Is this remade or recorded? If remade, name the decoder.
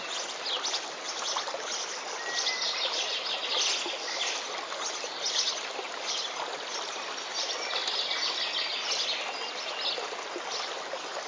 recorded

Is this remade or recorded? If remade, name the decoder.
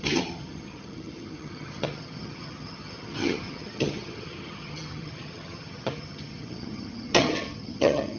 remade, vocoder, HiFi-GAN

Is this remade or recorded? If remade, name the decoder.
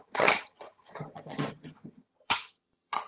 remade, vocoder, HiFi-GAN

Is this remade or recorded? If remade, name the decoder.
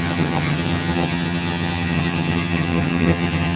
remade, vocoder, HiFi-GAN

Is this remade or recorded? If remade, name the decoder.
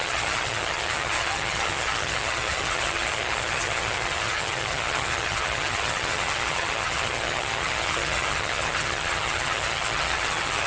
remade, vocoder, HiFi-GAN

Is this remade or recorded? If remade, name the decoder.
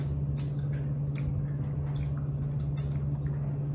recorded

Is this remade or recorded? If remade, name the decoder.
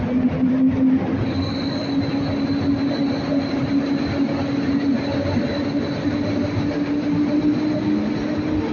recorded